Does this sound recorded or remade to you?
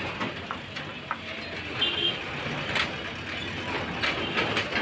recorded